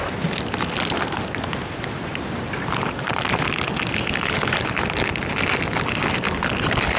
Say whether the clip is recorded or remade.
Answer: recorded